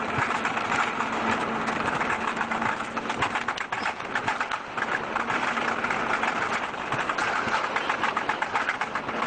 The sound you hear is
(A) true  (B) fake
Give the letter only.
A